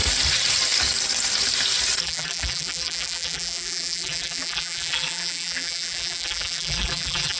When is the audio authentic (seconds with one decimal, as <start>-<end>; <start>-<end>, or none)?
0.0-2.0